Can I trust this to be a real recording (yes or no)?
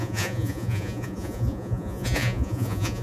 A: no